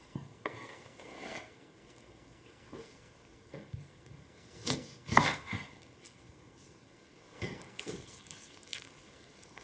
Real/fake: fake